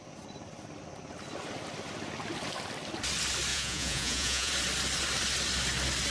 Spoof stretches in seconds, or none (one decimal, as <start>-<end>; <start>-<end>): 3.5-4.5